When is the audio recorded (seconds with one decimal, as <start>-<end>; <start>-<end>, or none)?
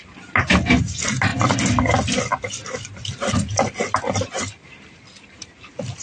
0.0-1.3; 1.8-2.3